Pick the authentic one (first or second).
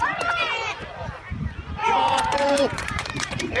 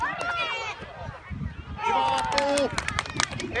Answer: second